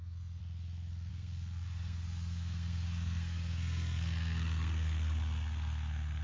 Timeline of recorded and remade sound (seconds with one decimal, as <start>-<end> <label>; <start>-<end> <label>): 0.0-0.4 remade; 0.4-1.1 recorded; 1.1-6.2 remade